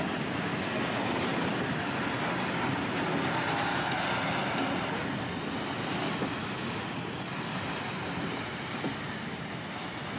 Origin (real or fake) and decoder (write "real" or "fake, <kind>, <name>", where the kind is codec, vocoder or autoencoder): real